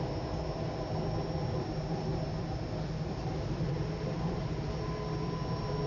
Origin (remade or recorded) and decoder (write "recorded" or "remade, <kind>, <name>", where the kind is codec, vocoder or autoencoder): recorded